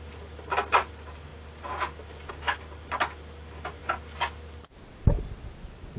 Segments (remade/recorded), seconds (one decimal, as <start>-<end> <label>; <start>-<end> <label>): 0.0-6.0 recorded